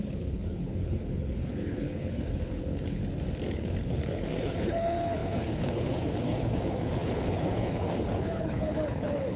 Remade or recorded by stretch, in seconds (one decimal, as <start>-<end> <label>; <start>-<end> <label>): 0.0-3.0 remade; 3.0-3.5 recorded; 3.5-9.4 remade